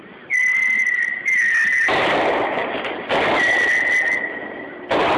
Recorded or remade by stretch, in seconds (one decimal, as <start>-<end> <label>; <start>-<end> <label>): 0.0-5.2 recorded